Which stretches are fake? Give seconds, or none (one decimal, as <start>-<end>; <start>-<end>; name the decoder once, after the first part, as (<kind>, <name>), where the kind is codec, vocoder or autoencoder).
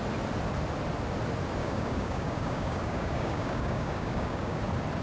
1.6-4.6 (codec, DAC)